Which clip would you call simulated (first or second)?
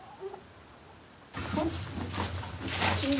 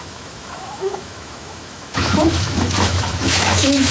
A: second